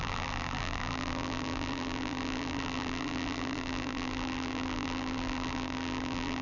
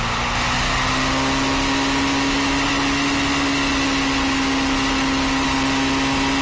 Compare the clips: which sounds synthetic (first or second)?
first